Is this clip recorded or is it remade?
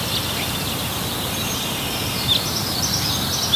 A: recorded